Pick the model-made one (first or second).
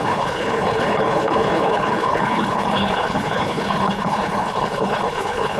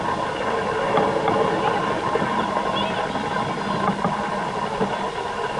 first